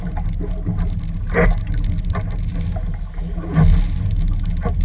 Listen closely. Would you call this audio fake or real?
real